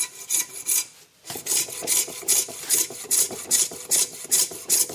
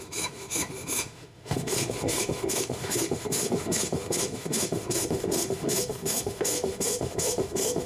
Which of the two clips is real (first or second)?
first